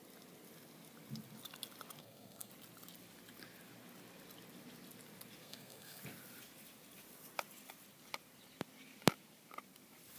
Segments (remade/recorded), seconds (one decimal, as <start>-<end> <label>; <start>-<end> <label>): 0.0-2.0 recorded; 2.0-2.5 remade; 2.5-5.4 recorded; 5.4-6.0 remade; 6.0-10.2 recorded